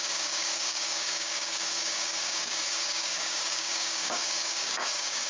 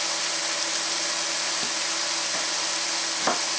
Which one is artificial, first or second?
first